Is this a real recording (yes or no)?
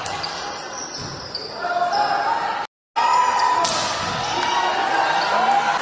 yes